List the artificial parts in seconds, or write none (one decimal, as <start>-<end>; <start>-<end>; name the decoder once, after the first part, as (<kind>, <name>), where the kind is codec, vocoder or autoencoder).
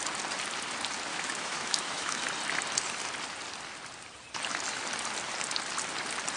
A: 1.1-2.2 (autoencoder, DAC-VAE)